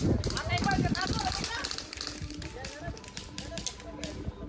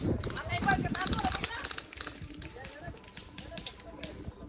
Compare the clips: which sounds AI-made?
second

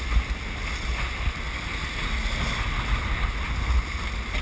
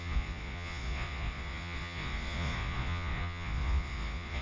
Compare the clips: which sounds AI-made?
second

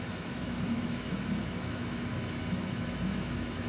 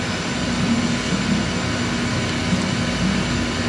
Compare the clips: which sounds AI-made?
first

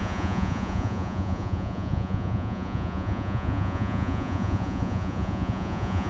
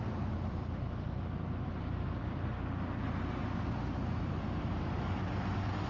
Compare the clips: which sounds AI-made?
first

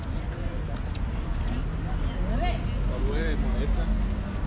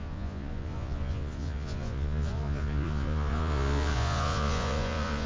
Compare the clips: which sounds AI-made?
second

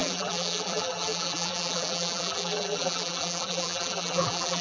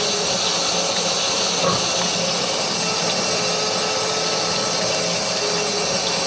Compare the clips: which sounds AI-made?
first